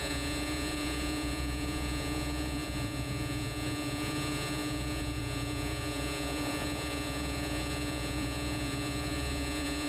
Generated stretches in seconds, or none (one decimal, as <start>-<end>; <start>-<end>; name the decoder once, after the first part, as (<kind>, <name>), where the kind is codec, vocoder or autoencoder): 0.0-9.9 (vocoder, Vocos)